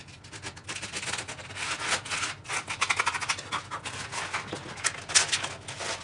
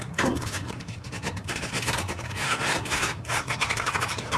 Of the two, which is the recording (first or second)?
first